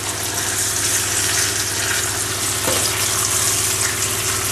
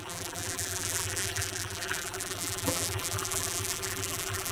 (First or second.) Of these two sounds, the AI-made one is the second